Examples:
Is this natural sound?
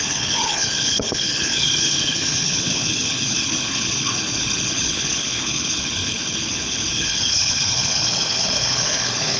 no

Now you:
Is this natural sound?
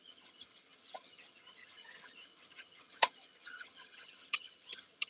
no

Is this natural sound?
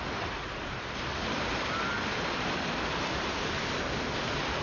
yes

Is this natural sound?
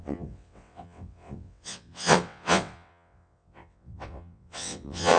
no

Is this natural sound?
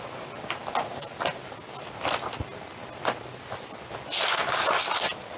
yes